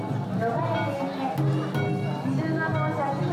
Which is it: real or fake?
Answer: real